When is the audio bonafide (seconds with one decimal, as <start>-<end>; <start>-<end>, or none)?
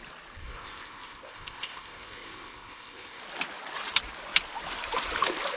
0.0-0.4; 3.2-5.6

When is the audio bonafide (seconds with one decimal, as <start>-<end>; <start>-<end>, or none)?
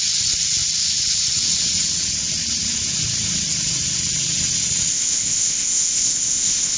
0.0-4.9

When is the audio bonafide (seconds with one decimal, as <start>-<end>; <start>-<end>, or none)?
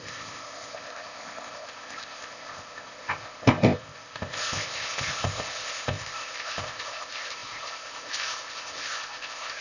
none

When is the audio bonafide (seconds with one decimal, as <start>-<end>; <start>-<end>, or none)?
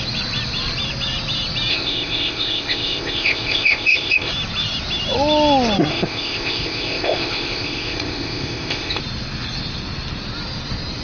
0.0-1.7; 4.3-5.9; 9.0-11.0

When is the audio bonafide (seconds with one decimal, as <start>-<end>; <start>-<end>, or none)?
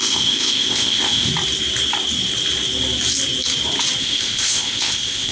1.3-4.0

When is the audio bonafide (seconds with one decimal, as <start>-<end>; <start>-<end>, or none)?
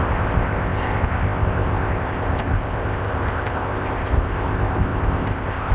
none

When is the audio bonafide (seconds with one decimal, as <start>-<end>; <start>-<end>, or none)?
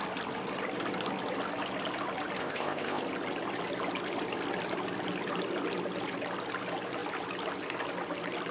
0.0-2.4; 3.0-8.5